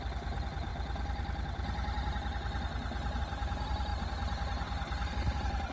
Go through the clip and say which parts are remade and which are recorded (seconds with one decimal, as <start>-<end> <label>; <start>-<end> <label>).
0.0-0.7 remade; 0.7-3.2 recorded; 3.2-3.9 remade; 3.9-5.1 recorded; 5.1-5.7 remade